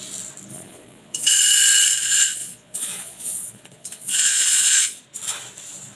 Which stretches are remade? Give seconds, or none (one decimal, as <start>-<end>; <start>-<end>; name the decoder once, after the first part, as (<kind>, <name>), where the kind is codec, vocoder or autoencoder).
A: 0.5-1.3 (vocoder, Vocos); 2.0-5.0